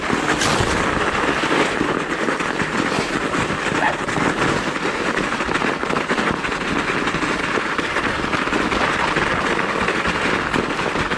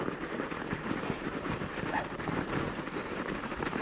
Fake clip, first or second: second